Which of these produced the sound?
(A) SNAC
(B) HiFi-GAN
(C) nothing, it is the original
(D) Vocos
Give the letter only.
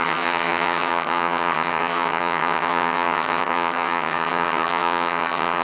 B